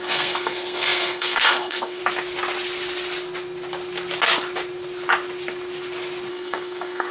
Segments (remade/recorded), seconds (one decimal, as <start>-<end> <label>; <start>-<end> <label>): 0.0-2.0 remade; 2.0-6.3 recorded; 6.3-7.1 remade